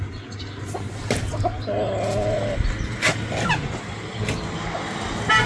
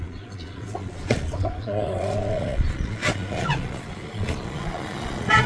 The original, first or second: first